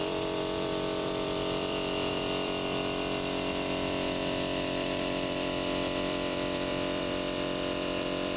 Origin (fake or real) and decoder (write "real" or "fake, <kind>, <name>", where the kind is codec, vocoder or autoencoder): fake, vocoder, BigVGAN v2